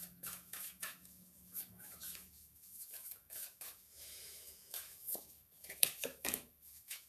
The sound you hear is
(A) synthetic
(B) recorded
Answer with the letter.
A